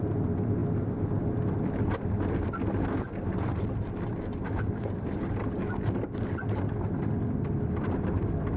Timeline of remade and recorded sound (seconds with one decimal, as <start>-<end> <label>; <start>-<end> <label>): 0.0-8.6 recorded